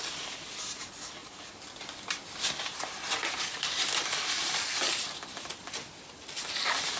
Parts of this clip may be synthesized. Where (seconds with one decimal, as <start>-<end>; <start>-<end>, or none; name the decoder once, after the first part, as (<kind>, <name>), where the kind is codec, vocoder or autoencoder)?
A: none